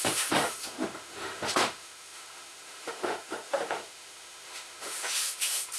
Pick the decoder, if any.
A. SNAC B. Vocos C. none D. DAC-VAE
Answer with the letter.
D